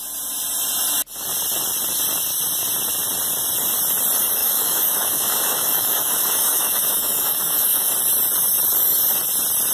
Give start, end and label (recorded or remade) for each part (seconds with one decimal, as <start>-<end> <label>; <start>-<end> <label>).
0.0-4.4 recorded; 4.4-7.9 remade; 7.9-9.7 recorded